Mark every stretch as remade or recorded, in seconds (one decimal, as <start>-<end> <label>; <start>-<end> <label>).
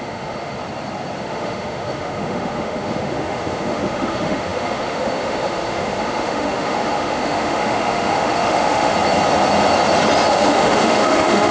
0.0-0.6 remade; 0.6-1.2 recorded; 1.2-8.9 remade; 8.9-10.3 recorded; 10.3-11.5 remade